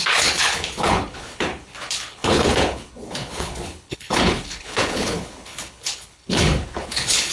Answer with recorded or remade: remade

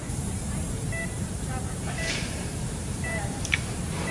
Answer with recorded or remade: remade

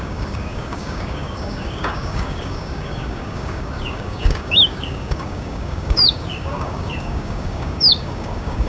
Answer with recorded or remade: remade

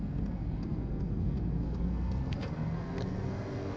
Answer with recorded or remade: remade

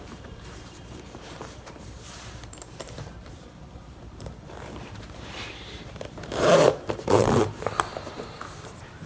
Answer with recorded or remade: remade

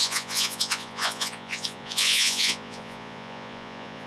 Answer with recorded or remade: remade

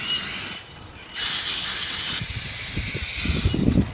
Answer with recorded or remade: recorded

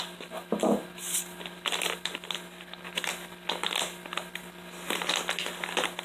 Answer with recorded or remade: recorded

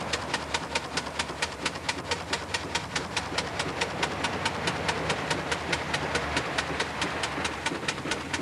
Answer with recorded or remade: remade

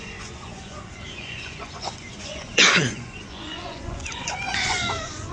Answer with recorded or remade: remade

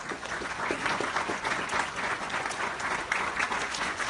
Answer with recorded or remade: remade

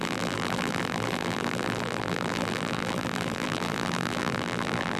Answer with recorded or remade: remade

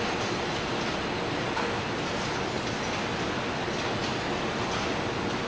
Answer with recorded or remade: recorded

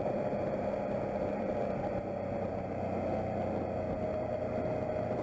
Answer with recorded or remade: recorded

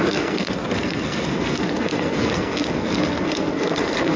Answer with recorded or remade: remade